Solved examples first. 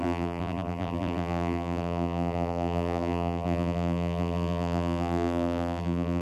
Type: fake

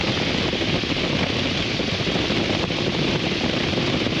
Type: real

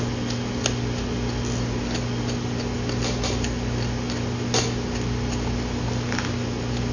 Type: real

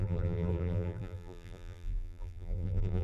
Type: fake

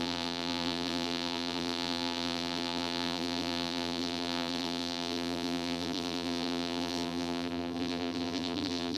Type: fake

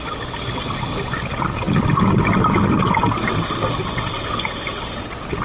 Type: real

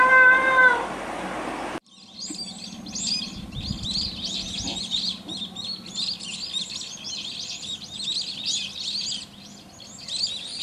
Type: real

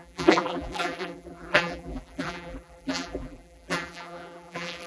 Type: fake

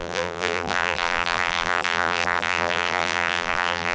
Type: fake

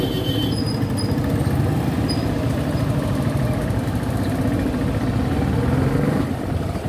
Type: real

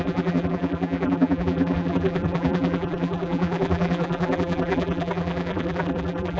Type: fake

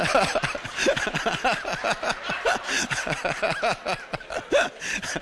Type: real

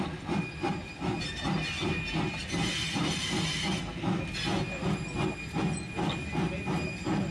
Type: real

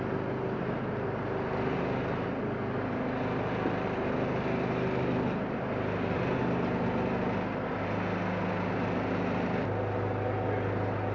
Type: real